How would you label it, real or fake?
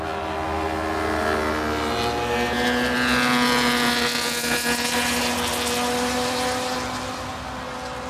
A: real